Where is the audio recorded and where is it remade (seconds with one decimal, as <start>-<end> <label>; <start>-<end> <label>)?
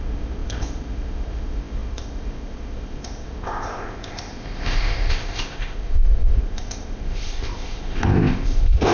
0.0-8.9 remade